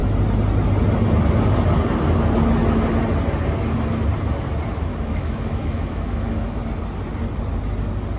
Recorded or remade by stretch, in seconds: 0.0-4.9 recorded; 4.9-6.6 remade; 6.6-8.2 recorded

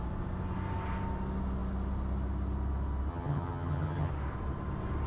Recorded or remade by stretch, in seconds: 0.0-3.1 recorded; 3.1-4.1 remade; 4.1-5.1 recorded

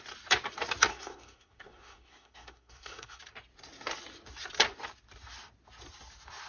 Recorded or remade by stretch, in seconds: 0.0-0.9 recorded; 0.9-3.2 remade; 3.2-6.5 recorded

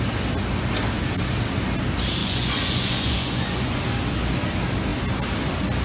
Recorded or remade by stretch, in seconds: 0.0-2.2 recorded; 2.2-3.8 remade; 3.8-5.8 recorded